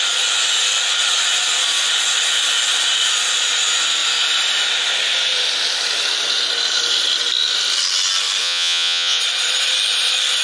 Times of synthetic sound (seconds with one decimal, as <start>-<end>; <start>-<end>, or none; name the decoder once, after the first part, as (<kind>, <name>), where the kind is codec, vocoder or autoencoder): 8.4-9.2 (vocoder, Vocos)